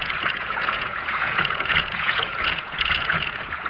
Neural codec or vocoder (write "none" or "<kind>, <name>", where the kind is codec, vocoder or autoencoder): vocoder, Vocos